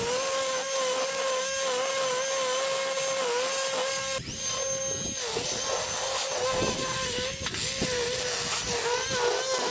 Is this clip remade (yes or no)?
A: no